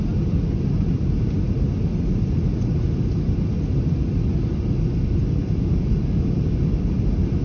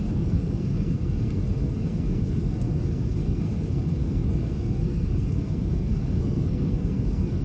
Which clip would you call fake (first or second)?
second